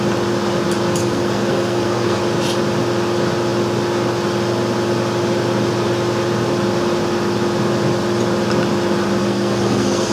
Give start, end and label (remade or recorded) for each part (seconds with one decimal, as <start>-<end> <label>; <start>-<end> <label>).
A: 0.0-1.0 recorded; 1.0-2.2 remade; 2.2-9.2 recorded; 9.2-10.1 remade

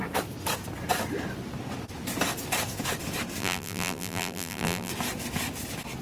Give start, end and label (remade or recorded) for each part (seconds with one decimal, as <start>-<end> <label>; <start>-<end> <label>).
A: 0.0-3.4 recorded; 3.4-4.9 remade; 4.9-6.0 recorded

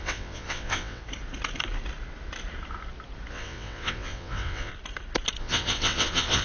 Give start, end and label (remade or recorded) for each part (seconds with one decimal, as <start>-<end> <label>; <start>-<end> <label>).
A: 0.0-1.0 remade; 1.0-3.3 recorded; 3.3-4.7 remade; 4.7-5.4 recorded; 5.4-6.4 remade

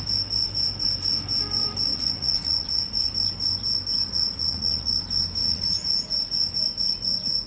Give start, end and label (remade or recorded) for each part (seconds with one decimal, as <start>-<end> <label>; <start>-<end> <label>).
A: 0.0-1.9 recorded; 1.9-3.1 remade; 3.1-4.0 recorded; 4.0-4.9 remade; 4.9-5.4 recorded; 5.4-6.2 remade; 6.2-7.5 recorded

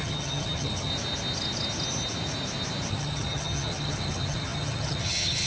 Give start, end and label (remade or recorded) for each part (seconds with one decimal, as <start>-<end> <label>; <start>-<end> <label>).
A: 0.0-0.9 remade; 0.9-2.9 recorded; 2.9-5.5 remade

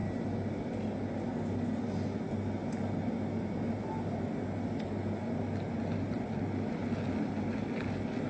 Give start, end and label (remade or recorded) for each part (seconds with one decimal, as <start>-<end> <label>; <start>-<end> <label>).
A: 0.0-8.3 recorded